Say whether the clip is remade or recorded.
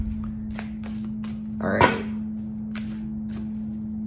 recorded